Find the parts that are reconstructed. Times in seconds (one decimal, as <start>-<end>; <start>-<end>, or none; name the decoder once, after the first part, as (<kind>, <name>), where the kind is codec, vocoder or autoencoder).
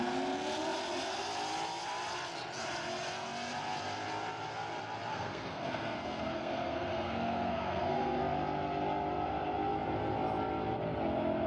5.1-8.2 (codec, SNAC)